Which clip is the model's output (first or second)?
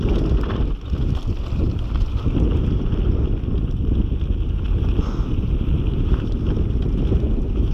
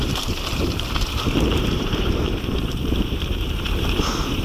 second